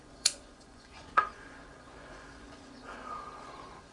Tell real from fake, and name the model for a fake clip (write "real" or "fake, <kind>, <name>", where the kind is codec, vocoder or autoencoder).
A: fake, vocoder, Vocos